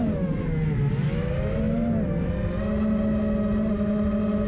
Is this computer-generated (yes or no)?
no